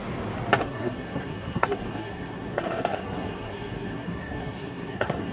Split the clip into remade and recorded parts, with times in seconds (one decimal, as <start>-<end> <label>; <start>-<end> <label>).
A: 0.0-0.6 recorded; 0.6-5.3 remade